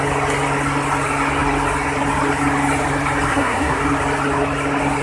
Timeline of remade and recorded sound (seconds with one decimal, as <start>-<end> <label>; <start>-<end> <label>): 0.0-3.3 recorded; 3.3-3.8 remade; 3.8-5.0 recorded